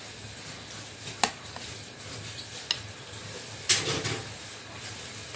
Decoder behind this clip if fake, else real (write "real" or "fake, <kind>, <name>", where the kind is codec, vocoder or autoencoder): real